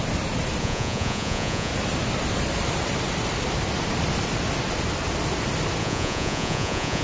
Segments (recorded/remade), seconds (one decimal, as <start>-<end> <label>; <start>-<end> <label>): 0.0-0.6 recorded; 0.6-1.7 remade; 1.7-5.8 recorded; 5.8-7.0 remade